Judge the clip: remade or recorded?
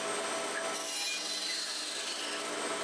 recorded